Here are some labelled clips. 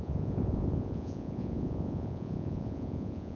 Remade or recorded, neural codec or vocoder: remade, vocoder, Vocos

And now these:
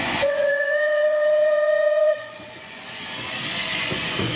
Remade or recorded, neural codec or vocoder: remade, vocoder, Vocos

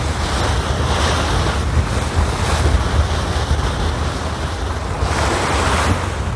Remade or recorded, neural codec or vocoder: recorded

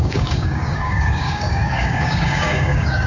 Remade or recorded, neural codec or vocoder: remade, codec, DAC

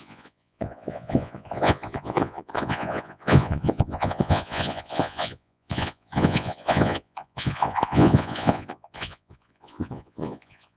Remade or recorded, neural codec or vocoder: remade, vocoder, Vocos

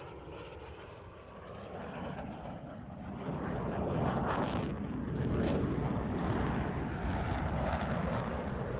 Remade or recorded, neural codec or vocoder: remade, vocoder, BigVGAN v2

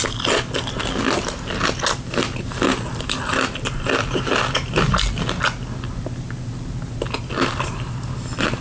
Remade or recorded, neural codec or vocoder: recorded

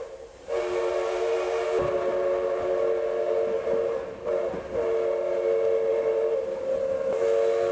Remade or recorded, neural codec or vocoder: recorded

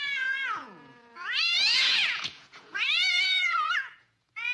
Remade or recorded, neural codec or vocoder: remade, vocoder, Vocos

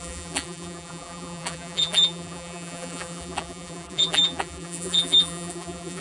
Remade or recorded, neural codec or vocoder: remade, vocoder, BigVGAN v2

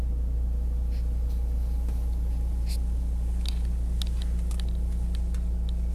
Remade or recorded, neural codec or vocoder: recorded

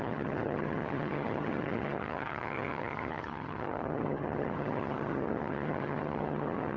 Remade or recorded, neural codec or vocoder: remade, vocoder, HiFi-GAN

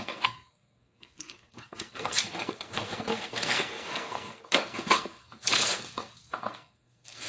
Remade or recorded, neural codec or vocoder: remade, codec, SNAC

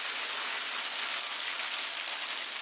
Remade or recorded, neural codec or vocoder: recorded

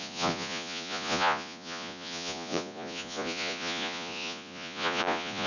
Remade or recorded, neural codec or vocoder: remade, vocoder, Vocos